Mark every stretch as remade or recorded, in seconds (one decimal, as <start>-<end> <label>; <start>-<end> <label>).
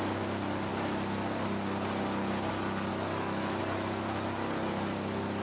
0.0-2.9 recorded; 2.9-3.6 remade; 3.6-5.4 recorded